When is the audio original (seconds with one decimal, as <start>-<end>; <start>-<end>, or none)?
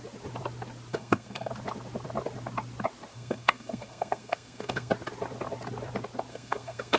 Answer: 0.0-0.9; 1.5-3.1; 4.9-6.3